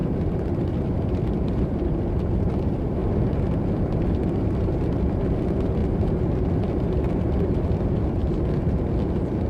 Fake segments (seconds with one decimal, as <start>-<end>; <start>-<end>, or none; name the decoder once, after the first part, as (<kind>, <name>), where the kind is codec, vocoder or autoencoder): 0.5-3.0 (vocoder, BigVGAN v2); 4.1-5.8; 6.5-8.2